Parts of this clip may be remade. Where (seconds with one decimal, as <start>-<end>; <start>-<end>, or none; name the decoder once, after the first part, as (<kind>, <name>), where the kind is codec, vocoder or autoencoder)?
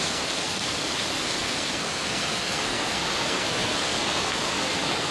0.0-5.1 (codec, SNAC)